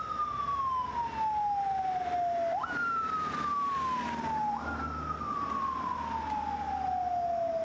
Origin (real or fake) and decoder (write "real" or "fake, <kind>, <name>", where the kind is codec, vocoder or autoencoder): real